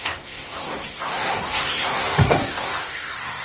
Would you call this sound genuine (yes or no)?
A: no